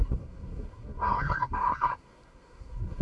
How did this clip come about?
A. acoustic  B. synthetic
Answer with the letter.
B